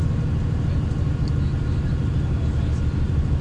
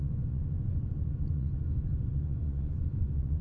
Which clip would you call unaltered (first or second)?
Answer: first